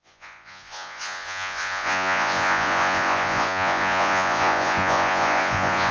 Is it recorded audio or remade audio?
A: remade